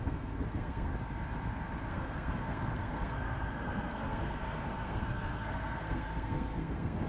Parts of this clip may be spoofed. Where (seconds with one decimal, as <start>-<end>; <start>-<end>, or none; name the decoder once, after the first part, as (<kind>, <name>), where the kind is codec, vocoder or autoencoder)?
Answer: 0.0-0.9 (codec, SNAC); 1.9-7.1